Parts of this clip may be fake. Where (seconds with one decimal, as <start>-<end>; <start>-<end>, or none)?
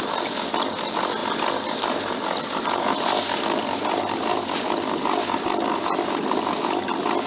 none